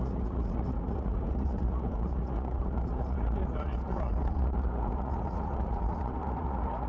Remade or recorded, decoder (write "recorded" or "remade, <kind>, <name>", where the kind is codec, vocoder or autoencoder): remade, vocoder, Vocos